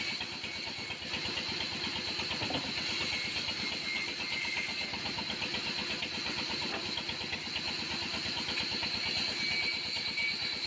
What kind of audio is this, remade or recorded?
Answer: recorded